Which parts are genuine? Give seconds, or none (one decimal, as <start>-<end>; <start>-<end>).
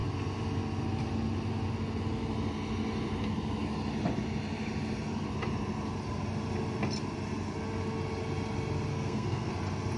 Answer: 0.0-8.9; 9.5-10.0